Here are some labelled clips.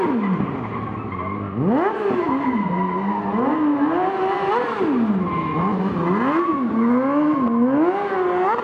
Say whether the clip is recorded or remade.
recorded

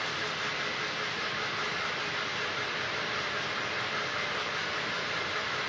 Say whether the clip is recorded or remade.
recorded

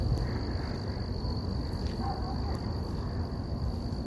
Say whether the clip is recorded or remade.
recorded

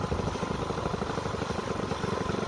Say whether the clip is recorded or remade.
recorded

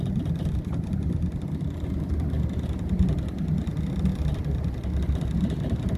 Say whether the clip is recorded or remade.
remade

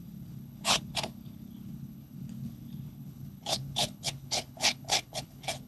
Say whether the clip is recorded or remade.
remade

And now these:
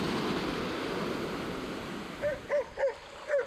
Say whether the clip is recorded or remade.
recorded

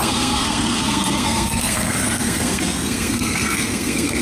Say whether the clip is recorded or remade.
remade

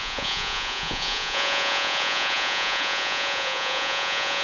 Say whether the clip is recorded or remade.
remade